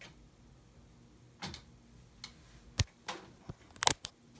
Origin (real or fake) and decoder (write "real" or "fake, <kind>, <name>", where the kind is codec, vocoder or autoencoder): real